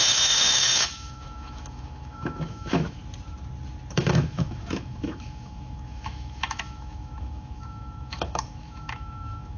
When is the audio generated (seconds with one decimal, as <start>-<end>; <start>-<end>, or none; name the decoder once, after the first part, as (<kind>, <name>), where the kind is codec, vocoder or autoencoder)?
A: 0.0-3.0 (autoencoder, DAC-VAE); 3.9-9.6